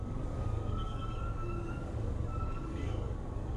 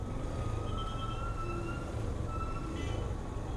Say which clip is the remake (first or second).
first